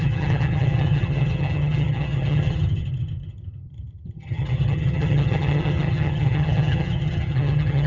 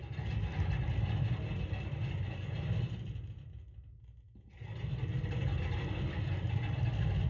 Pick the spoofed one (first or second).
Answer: first